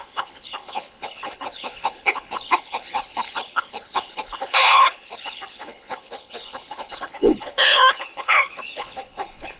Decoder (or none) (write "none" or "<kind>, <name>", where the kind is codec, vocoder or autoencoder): codec, HILCodec